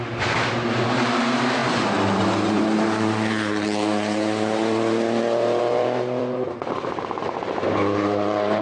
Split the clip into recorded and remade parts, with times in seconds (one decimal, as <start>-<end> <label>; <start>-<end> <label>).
0.0-8.6 remade